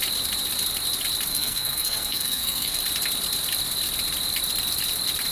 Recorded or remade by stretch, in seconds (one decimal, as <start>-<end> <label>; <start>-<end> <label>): 0.0-1.3 recorded; 1.3-2.8 remade; 2.8-5.3 recorded